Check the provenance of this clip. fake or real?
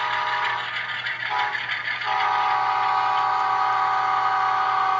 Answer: real